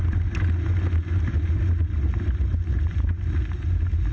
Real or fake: real